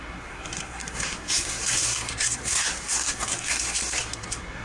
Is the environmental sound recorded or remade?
remade